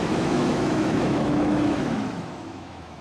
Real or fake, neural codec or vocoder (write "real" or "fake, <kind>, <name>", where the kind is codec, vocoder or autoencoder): fake, autoencoder, DAC-VAE